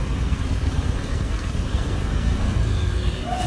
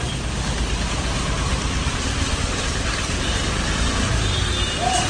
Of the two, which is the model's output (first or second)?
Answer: first